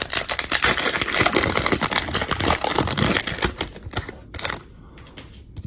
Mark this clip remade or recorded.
recorded